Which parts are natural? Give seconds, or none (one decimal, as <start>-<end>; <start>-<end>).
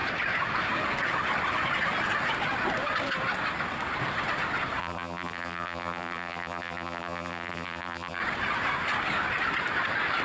0.0-4.8; 8.2-10.2